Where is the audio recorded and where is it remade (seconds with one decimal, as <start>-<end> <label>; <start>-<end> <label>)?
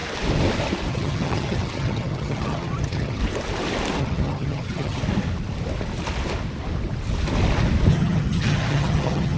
0.0-0.9 recorded; 0.9-3.2 remade; 3.2-4.0 recorded; 4.0-5.0 remade; 5.0-7.9 recorded; 7.9-9.4 remade